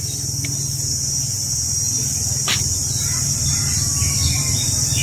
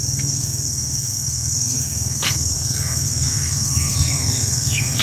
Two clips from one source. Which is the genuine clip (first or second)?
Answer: first